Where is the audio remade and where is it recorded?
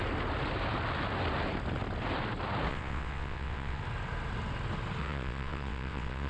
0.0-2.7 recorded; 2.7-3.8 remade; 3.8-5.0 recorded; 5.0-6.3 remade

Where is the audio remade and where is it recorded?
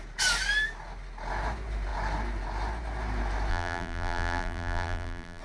0.0-3.5 recorded; 3.5-5.4 remade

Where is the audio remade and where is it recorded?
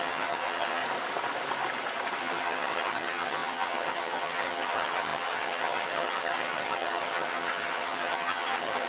0.0-0.8 remade; 0.8-2.2 recorded; 2.2-8.9 remade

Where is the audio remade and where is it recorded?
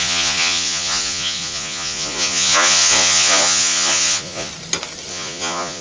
0.0-4.5 remade; 4.5-5.1 recorded; 5.1-5.8 remade